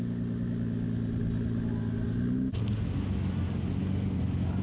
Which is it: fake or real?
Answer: real